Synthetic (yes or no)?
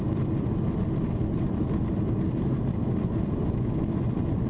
no